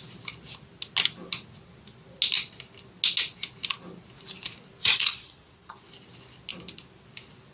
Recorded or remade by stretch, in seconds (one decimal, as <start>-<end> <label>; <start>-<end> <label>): 0.0-4.8 recorded; 4.8-5.9 remade; 5.9-7.5 recorded